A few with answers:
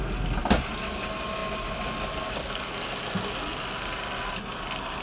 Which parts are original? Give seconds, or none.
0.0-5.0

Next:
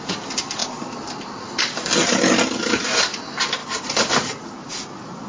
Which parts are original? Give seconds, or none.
0.0-5.3

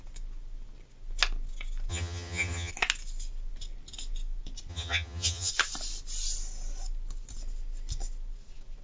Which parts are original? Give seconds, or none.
0.0-1.9; 2.7-4.7; 5.5-8.8

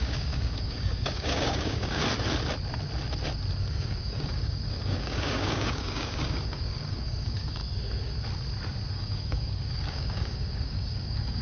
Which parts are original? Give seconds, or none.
2.0-3.7; 7.6-8.9